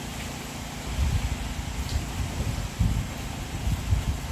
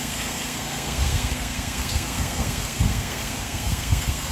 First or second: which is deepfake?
second